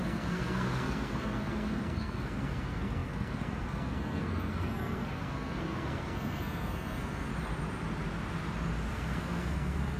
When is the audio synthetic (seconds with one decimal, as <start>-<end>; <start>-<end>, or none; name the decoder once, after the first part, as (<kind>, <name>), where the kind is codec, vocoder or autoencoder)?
0.0-7.3 (codec, SNAC); 8.9-10.0